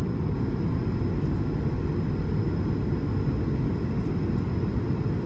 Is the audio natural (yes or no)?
yes